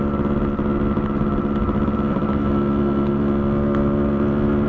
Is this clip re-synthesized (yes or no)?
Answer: no